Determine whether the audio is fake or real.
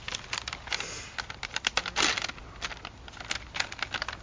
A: real